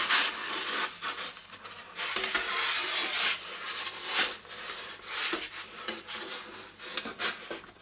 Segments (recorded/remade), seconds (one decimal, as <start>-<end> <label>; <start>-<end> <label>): 0.0-7.8 recorded